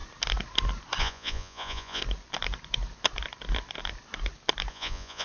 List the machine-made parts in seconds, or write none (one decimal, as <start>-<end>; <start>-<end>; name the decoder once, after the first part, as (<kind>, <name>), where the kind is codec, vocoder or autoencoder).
1.0-2.0 (vocoder, Vocos); 4.7-5.2